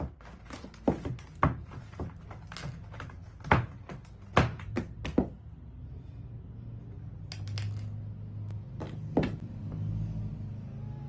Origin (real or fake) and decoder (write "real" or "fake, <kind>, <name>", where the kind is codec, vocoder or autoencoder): real